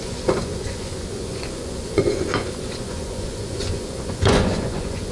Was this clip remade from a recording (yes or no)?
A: yes